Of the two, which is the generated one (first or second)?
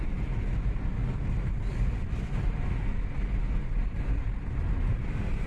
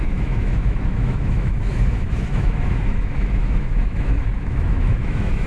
second